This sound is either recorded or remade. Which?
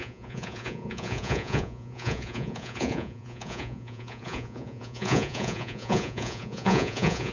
remade